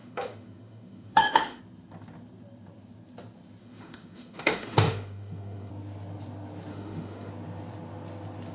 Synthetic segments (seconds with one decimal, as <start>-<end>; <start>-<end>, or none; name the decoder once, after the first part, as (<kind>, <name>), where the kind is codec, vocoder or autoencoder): 0.0-1.6 (autoencoder, DAC-VAE); 3.6-5.7; 6.7-7.3